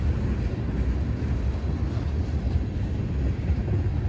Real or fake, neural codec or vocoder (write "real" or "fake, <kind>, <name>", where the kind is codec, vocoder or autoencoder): real